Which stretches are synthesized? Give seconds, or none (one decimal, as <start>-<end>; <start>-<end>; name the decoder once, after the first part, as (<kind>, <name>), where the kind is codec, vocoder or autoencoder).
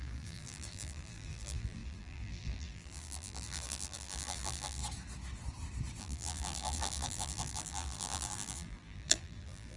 0.0-4.8 (vocoder, BigVGAN v2); 6.0-9.8